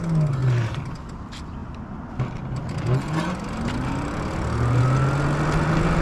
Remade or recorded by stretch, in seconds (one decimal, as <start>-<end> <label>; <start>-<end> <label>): 0.0-6.0 recorded